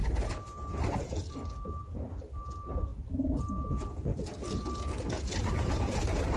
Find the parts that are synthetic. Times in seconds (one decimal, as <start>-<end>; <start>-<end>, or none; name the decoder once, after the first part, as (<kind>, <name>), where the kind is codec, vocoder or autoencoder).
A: 0.0-1.3 (vocoder, BigVGAN v2); 2.9-3.5; 5.4-6.4